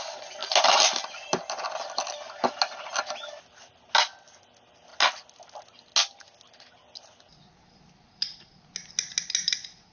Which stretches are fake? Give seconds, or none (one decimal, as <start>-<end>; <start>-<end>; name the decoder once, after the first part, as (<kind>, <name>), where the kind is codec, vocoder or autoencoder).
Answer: none

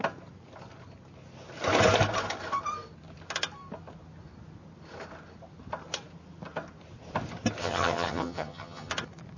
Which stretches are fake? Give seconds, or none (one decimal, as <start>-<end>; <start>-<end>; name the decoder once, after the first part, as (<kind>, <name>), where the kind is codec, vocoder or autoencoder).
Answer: 7.6-8.9 (vocoder, HiFi-GAN)

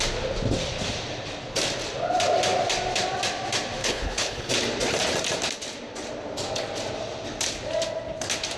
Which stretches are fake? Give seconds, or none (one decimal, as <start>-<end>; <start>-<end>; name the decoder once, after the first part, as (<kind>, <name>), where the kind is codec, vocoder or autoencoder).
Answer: 3.8-4.5 (codec, HILCodec)